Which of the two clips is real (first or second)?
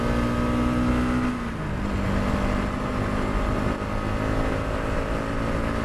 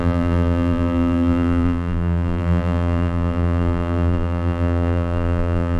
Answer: first